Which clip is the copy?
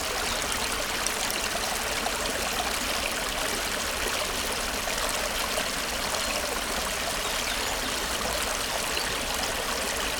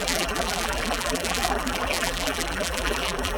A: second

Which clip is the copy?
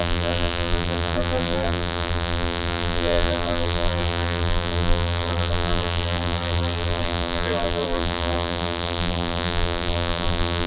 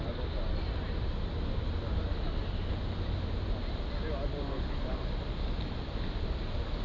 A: first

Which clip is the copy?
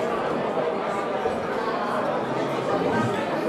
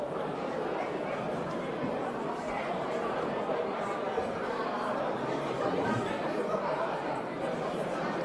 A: second